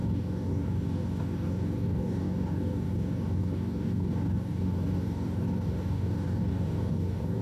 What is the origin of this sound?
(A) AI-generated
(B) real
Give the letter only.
A